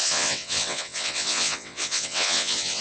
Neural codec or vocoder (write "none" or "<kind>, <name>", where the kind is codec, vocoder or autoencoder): vocoder, WaveNeXt